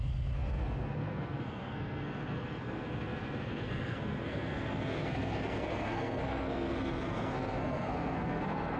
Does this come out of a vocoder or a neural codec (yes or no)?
yes